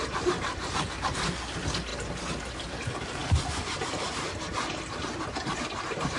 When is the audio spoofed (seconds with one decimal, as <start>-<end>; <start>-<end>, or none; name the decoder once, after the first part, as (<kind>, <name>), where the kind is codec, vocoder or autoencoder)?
none